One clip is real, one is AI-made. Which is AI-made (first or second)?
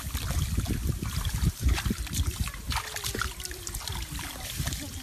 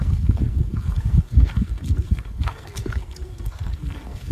second